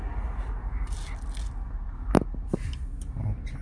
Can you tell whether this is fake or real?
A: real